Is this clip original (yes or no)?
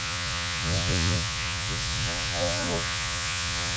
no